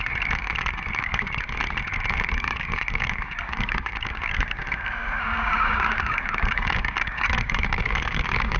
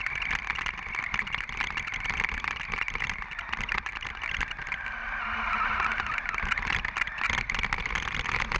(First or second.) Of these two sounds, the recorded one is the second